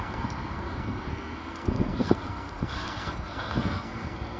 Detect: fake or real fake